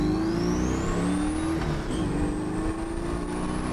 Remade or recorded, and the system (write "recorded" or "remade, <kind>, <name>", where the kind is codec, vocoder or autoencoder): recorded